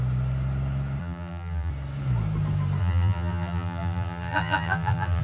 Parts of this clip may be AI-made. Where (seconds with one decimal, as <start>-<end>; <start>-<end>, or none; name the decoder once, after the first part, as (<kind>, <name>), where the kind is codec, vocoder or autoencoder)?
1.0-1.7 (vocoder, BigVGAN v2); 2.8-5.2